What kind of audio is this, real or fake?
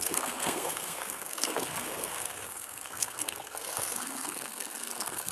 fake